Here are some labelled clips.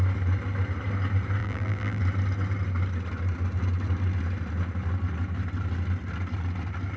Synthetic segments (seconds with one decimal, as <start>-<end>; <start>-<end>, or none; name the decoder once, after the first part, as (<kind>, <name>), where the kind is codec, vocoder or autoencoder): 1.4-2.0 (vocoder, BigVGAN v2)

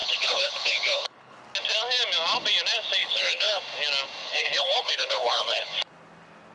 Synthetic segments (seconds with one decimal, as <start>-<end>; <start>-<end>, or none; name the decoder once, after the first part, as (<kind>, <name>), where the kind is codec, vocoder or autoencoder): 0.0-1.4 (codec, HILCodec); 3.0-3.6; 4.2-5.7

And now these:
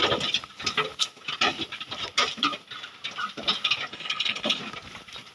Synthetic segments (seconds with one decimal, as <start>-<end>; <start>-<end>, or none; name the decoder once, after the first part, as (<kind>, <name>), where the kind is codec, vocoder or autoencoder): 3.9-4.6 (codec, HILCodec)

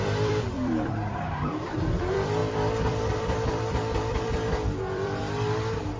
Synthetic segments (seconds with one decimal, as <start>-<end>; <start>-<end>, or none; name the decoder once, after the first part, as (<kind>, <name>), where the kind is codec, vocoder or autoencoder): 0.0-5.2 (vocoder, BigVGAN v2)

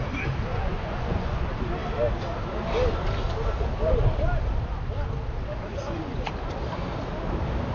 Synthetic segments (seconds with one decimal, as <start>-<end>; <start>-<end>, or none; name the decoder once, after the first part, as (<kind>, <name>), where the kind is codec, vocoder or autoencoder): 0.5-1.4 (vocoder, Vocos); 5.7-6.3